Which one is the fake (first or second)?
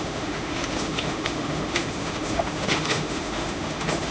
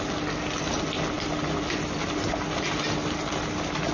first